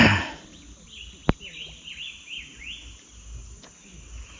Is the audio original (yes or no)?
yes